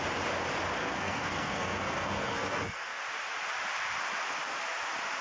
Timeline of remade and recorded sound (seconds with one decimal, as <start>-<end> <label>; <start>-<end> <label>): 0.0-0.8 recorded; 0.8-3.0 remade; 3.0-5.2 recorded